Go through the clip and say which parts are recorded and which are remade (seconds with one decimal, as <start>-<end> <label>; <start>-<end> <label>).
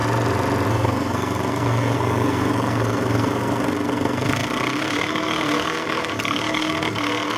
0.0-0.7 recorded; 0.7-7.4 remade